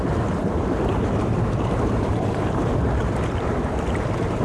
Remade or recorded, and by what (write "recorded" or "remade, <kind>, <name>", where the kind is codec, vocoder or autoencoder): remade, vocoder, BigVGAN v2